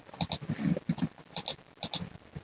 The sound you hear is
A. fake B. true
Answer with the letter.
B